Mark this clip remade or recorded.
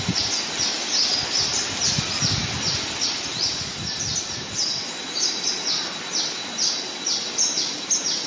recorded